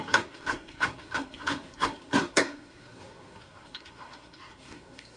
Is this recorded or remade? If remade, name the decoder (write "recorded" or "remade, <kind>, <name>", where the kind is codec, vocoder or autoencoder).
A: remade, codec, SNAC